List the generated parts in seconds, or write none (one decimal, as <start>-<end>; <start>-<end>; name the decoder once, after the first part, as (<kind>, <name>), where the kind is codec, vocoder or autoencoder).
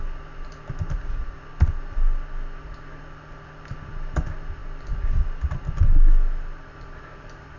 none